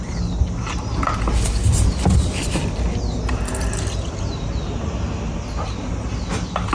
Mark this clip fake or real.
real